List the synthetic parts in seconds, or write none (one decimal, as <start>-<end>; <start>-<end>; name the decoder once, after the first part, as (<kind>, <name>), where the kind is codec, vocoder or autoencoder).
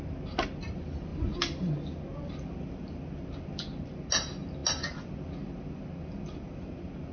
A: none